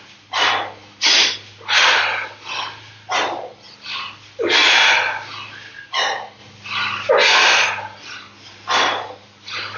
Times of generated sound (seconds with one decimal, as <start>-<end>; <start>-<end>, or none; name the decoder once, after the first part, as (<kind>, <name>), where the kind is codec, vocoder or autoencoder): none